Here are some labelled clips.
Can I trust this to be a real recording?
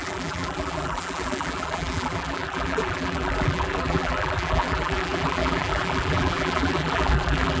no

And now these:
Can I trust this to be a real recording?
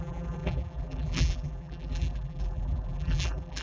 no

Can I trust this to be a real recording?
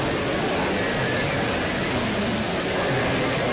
yes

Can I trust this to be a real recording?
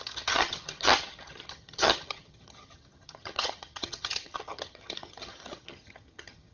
no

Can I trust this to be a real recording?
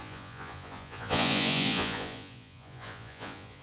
no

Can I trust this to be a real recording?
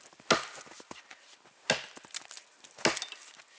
yes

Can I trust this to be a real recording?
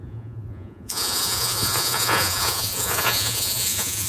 no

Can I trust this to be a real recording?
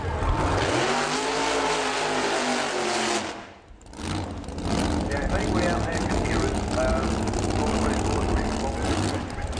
yes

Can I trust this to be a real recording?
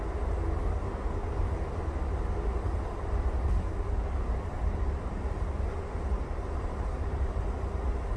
yes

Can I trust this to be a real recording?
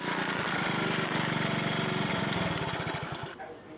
yes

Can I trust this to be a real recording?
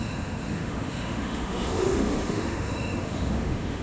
no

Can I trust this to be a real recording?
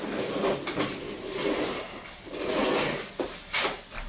yes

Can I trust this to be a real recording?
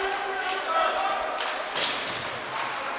yes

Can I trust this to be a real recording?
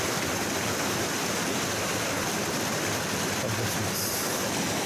yes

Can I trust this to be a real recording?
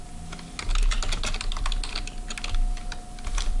yes